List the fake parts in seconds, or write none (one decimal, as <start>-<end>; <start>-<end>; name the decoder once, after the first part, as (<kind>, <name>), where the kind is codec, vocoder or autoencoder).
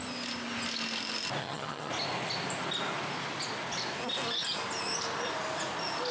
1.4-1.9 (vocoder, HiFi-GAN)